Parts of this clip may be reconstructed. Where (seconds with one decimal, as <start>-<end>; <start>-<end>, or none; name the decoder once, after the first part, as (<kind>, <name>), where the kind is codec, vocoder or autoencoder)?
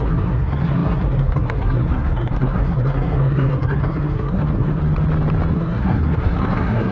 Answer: 0.0-4.8 (codec, SNAC); 5.5-6.9